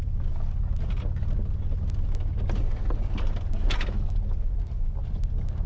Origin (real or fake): real